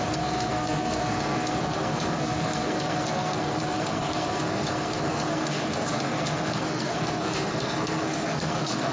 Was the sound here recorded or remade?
remade